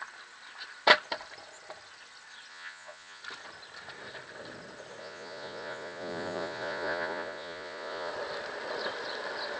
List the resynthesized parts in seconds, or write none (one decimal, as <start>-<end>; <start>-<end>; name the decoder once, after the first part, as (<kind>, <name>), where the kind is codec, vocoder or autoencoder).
2.5-3.2 (vocoder, Vocos); 5.0-8.1